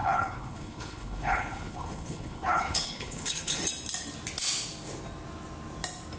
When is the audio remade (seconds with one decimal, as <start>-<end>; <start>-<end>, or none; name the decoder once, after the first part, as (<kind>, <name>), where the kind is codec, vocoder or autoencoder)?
0.0-3.6 (codec, HILCodec)